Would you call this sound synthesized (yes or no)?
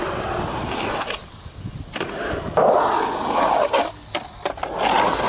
no